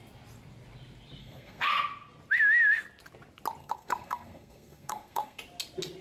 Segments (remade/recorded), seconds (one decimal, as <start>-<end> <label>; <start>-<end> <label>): 0.0-1.2 recorded; 1.2-1.7 remade; 1.7-3.6 recorded; 3.6-5.4 remade; 5.4-6.0 recorded